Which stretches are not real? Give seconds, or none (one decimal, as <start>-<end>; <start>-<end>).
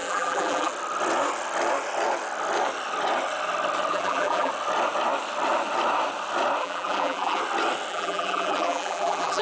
0.0-0.7; 3.9-4.5; 6.6-7.4; 7.9-9.4